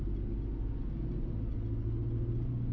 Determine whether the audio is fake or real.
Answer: real